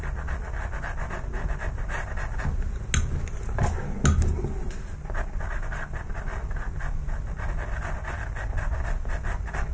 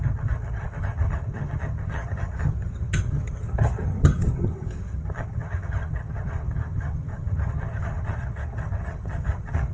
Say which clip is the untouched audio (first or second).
first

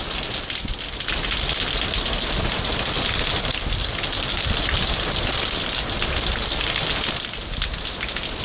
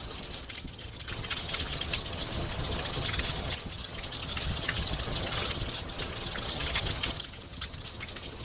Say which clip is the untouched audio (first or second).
first